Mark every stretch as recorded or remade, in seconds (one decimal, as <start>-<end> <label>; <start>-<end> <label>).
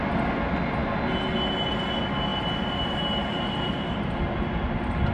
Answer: 0.0-5.1 recorded